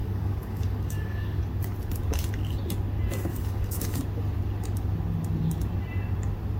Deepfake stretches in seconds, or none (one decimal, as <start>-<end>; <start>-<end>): 0.0-1.4; 3.3-4.0